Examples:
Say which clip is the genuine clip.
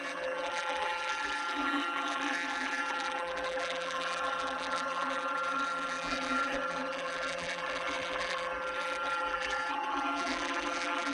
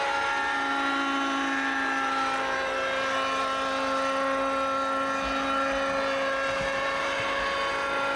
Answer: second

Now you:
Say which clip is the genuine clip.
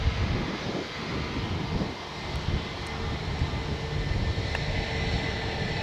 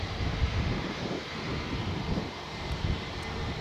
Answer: first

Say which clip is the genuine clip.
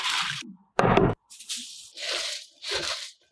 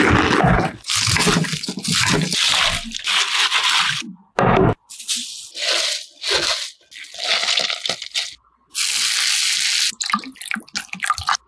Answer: second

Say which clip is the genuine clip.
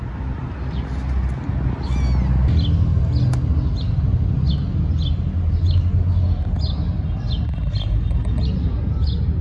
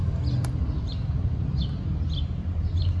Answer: first